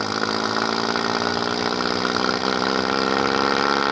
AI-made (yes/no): no